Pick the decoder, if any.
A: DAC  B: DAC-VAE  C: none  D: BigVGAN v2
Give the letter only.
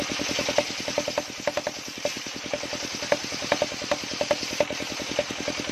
C